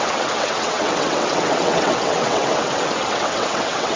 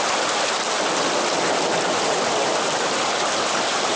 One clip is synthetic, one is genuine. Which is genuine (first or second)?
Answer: second